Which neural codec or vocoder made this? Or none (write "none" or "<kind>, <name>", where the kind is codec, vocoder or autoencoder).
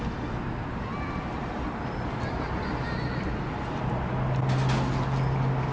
none